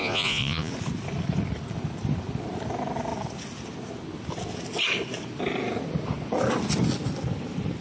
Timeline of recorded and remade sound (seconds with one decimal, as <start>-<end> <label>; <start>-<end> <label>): 0.0-0.7 remade; 0.7-7.8 recorded